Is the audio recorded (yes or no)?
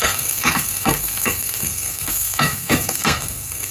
no